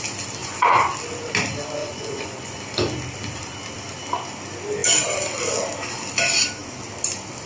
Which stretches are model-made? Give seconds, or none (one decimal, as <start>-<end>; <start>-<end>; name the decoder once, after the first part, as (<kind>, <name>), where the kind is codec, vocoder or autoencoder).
0.4-0.9 (vocoder, Vocos); 1.8-2.6